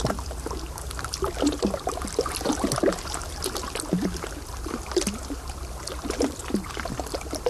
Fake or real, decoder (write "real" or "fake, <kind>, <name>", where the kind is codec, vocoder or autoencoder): real